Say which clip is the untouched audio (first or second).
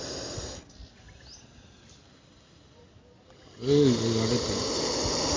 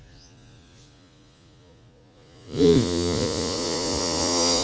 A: first